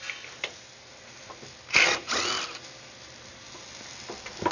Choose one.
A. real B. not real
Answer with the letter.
A